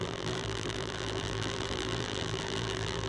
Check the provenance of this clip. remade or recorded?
remade